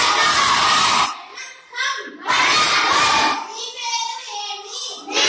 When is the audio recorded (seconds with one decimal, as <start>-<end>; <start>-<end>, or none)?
0.0-1.3; 2.3-5.3